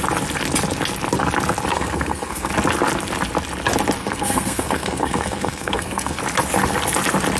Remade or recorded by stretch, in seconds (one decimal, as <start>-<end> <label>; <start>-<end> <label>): 0.0-1.7 recorded; 1.7-2.5 remade; 2.5-4.0 recorded; 4.0-6.2 remade; 6.2-7.4 recorded